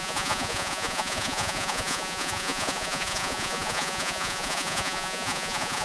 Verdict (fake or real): fake